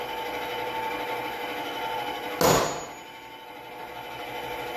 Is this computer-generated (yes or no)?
no